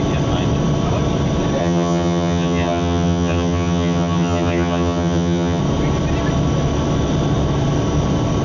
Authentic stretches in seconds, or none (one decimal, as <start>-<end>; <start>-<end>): 0.0-1.6; 5.6-8.4